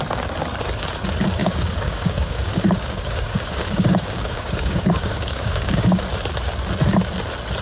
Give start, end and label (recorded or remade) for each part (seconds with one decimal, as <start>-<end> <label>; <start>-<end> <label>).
0.0-1.4 recorded; 1.4-6.0 remade; 6.0-7.6 recorded